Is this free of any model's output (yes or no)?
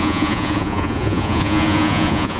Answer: no